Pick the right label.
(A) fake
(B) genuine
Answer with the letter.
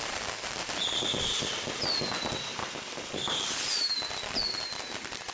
B